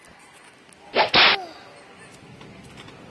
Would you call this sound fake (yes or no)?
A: no